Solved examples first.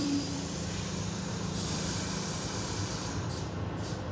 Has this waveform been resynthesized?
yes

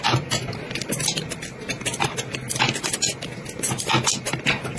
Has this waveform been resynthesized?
no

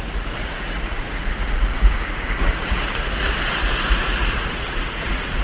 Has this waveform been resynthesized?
yes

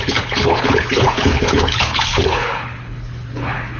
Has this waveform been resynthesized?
yes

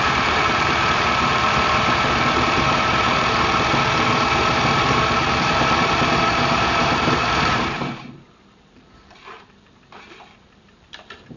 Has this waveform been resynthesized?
yes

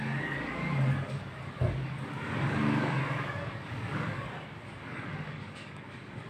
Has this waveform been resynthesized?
yes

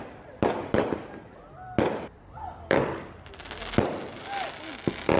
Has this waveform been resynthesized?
no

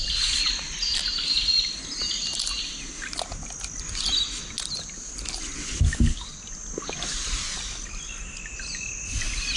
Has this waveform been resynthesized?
no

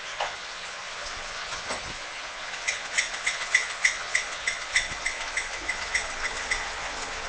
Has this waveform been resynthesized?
yes